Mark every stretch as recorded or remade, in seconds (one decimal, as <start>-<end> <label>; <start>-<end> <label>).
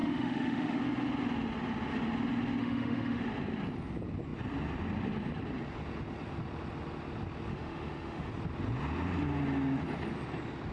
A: 0.0-0.8 remade; 0.8-2.6 recorded; 2.6-3.2 remade; 3.2-7.5 recorded; 7.5-8.3 remade; 8.3-10.7 recorded